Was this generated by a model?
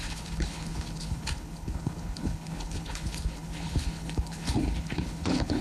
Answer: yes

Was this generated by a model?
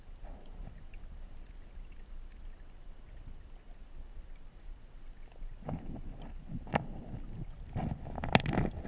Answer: no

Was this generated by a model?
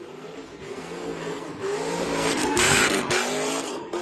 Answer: yes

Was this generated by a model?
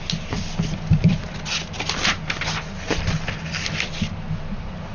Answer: no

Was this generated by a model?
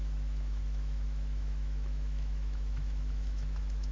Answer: yes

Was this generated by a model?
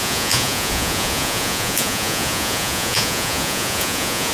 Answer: yes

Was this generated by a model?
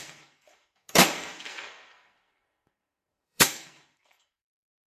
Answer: yes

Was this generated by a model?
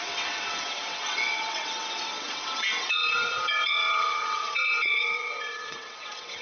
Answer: yes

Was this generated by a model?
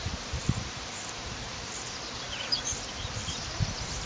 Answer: yes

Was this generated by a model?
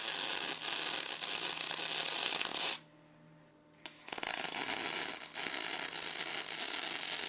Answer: no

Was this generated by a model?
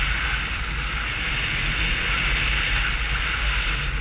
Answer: no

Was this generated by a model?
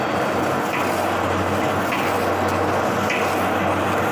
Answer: no